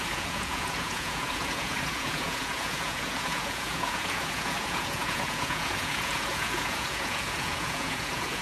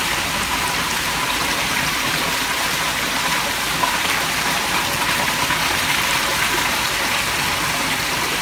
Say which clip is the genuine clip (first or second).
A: second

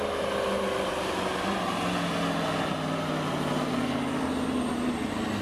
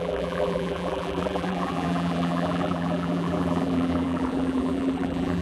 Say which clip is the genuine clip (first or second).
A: first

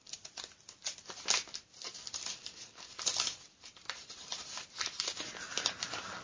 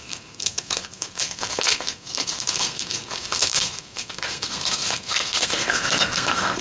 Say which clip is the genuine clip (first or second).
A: first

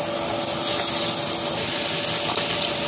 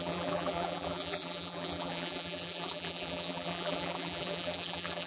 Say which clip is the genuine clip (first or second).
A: first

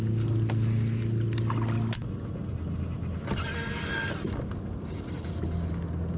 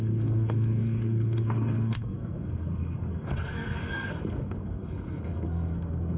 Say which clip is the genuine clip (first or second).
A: first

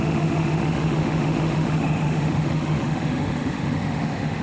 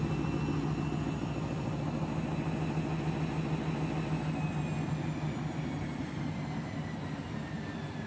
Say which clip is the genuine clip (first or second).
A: second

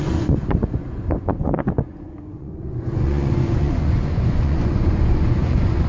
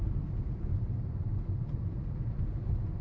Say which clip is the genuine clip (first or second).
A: second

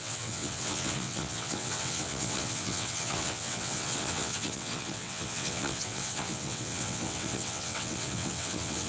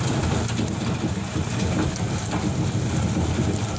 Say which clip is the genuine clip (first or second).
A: second